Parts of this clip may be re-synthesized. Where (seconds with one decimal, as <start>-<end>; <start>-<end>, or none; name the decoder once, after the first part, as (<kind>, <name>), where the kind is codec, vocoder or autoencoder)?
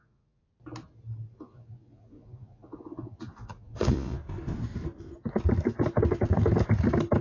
0.0-0.4 (vocoder, Vocos); 1.3-4.2